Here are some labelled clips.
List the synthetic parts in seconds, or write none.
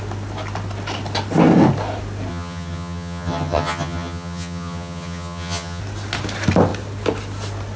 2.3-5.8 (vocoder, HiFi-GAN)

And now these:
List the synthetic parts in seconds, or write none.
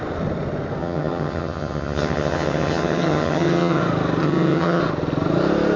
0.8-3.8 (vocoder, HiFi-GAN); 4.2-4.8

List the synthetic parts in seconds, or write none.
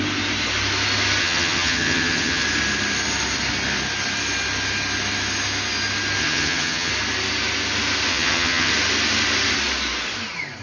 1.2-2.4 (vocoder, HiFi-GAN); 6.2-6.9; 8.1-8.7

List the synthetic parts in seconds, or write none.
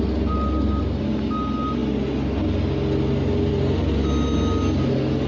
none